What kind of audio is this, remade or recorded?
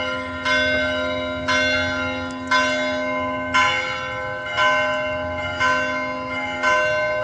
recorded